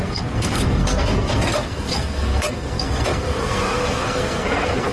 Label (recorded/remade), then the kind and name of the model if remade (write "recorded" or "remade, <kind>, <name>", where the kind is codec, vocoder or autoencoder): remade, codec, SNAC